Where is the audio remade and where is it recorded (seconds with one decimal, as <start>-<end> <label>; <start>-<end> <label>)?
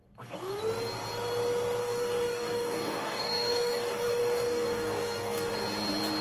0.0-0.6 remade; 0.6-1.8 recorded; 1.8-5.5 remade; 5.5-6.2 recorded